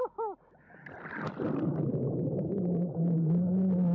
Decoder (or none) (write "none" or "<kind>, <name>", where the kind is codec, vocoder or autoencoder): none